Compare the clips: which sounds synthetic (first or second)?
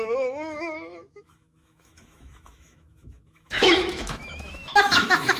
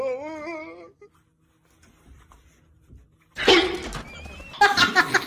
first